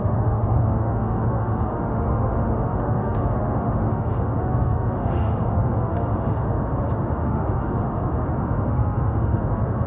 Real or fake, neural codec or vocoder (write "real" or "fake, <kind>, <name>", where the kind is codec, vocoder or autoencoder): fake, autoencoder, DAC-VAE